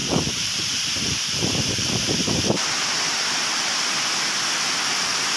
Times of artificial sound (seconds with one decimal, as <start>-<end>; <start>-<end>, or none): 0.0-3.2